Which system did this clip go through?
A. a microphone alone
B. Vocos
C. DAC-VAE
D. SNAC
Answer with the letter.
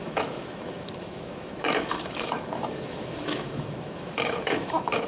C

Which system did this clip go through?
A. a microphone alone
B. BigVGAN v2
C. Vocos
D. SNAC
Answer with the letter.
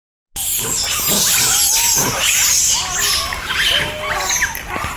A